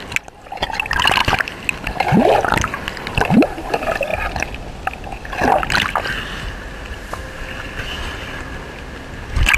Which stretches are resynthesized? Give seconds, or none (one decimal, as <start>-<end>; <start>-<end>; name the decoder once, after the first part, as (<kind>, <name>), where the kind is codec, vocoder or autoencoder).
none